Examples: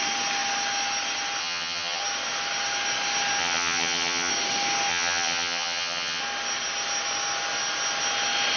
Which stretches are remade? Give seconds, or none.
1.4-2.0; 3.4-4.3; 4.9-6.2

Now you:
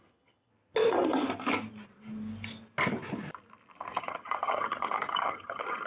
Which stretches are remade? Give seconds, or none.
0.0-0.5; 4.0-5.9

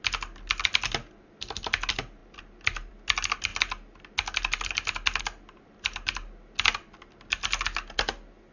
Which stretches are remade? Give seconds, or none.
none

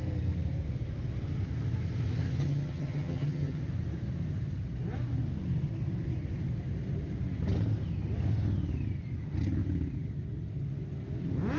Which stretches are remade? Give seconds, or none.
2.4-3.6

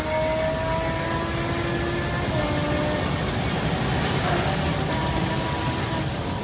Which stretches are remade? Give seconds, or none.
none

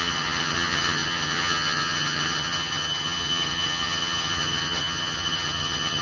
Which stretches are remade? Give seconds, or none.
0.0-6.0